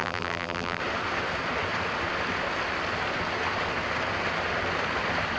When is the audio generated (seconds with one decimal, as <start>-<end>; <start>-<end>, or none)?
0.0-0.8